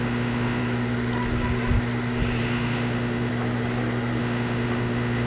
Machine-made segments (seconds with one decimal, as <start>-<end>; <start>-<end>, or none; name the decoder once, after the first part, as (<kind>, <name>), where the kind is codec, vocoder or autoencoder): 0.0-0.6 (autoencoder, DAC-VAE); 2.4-3.3; 4.2-5.3